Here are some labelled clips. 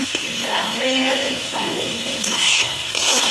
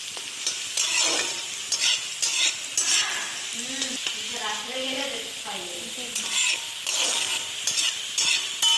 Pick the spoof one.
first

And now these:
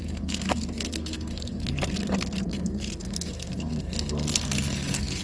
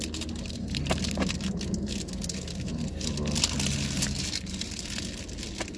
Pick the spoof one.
first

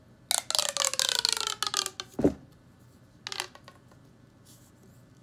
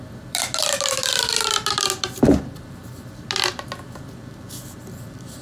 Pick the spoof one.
second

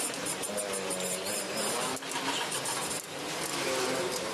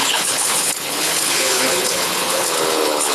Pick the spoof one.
second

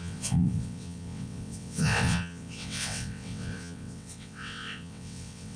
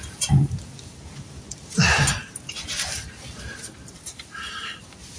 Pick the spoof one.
first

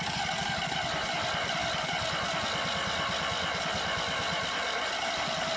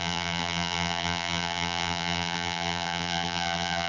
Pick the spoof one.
second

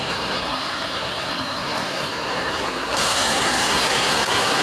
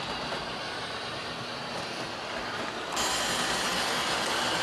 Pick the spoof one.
first